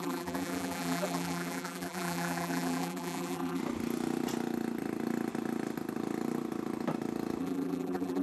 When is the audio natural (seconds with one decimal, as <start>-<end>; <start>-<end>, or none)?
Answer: 3.6-7.4